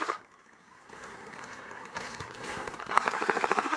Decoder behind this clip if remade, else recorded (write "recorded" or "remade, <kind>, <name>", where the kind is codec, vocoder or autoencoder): remade, codec, SNAC